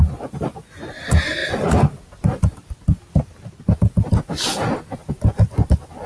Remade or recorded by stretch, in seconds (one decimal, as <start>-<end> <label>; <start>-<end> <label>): 0.0-6.1 recorded

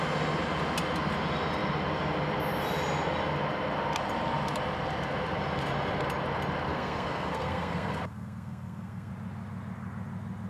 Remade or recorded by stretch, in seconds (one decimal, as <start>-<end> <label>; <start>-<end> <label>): 0.0-6.7 recorded; 6.7-9.1 remade; 9.1-10.5 recorded

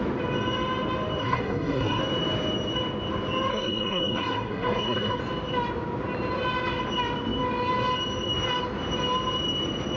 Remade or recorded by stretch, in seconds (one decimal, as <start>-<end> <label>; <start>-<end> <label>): 0.0-1.2 recorded; 1.2-2.0 remade; 2.0-3.5 recorded; 3.5-5.2 remade; 5.2-10.0 recorded

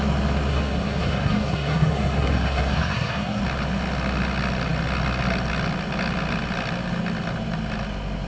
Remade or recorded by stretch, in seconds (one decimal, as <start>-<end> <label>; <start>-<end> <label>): 0.0-0.5 recorded; 0.5-3.4 remade; 3.4-8.3 recorded

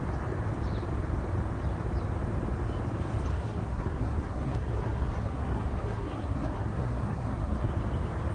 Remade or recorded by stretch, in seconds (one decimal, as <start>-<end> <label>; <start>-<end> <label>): 0.0-3.3 recorded; 3.3-7.7 remade; 7.7-8.3 recorded